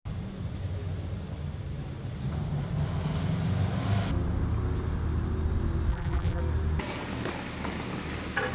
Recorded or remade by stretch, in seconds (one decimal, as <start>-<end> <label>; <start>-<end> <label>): 0.0-5.9 recorded; 5.9-6.4 remade; 6.4-8.5 recorded